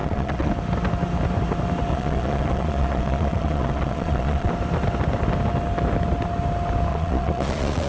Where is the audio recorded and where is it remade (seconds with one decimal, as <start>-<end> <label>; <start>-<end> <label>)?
0.0-0.5 remade; 0.5-1.9 recorded; 1.9-4.5 remade; 4.5-6.9 recorded; 6.9-7.9 remade